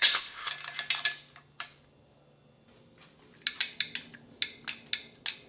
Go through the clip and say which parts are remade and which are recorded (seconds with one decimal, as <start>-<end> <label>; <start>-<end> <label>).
0.0-0.5 remade; 0.5-5.5 recorded